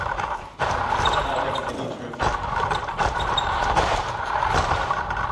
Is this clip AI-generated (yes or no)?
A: yes